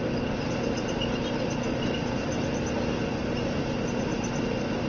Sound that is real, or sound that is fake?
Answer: real